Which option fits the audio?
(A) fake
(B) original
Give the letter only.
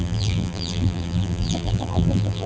A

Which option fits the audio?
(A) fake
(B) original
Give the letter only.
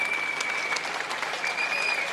B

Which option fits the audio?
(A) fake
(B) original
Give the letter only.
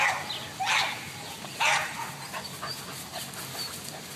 B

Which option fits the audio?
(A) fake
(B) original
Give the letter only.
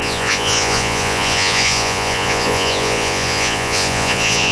A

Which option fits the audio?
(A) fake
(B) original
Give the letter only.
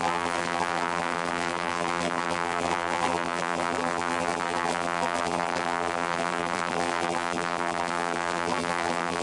A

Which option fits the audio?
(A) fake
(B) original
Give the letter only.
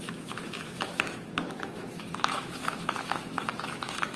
A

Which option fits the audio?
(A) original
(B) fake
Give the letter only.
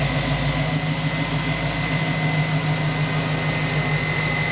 A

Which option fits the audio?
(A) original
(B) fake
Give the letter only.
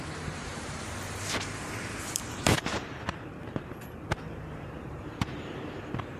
B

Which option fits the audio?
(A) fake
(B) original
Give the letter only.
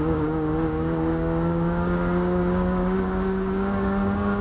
A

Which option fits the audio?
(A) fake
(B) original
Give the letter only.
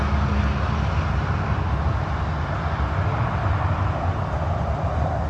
A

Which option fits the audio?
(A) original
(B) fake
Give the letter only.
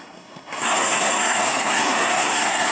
B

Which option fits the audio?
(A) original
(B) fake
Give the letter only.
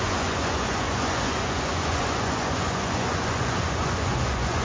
B